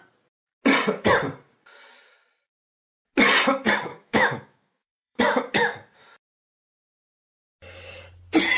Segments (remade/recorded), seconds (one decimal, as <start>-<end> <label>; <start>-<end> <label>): 0.0-3.9 recorded; 3.9-5.2 remade; 5.2-8.6 recorded